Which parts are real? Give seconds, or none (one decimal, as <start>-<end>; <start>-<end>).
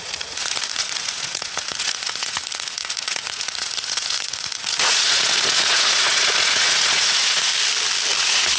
7.5-8.2